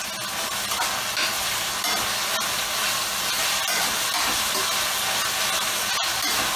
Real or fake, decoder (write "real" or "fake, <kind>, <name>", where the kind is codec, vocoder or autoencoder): real